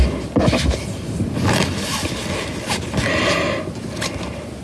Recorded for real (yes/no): yes